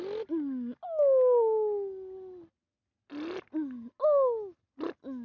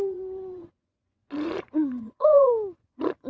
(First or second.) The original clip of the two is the first